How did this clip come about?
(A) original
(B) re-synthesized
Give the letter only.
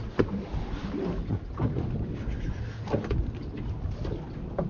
A